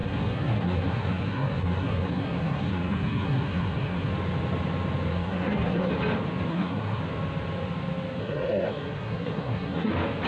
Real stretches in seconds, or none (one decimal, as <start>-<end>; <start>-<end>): 4.1-5.1; 5.9-6.5; 7.0-8.2; 9.9-10.3